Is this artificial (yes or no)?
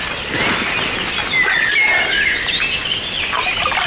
no